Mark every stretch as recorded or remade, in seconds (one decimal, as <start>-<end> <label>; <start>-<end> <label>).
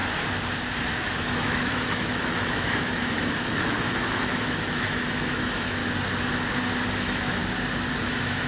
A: 0.0-1.2 recorded; 1.2-5.8 remade; 5.8-6.9 recorded; 6.9-7.4 remade; 7.4-8.0 recorded; 8.0-8.5 remade